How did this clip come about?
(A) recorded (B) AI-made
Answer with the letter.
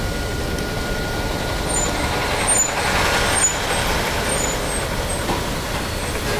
A